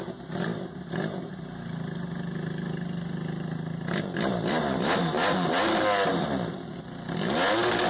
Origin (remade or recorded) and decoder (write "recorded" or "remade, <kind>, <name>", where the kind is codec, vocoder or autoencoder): recorded